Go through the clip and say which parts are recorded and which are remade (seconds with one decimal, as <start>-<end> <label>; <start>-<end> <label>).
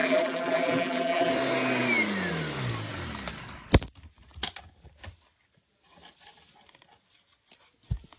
0.0-1.3 remade; 1.3-8.2 recorded